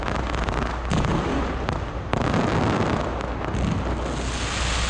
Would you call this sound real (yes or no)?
yes